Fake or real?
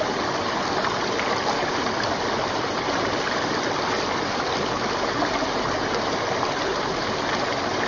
real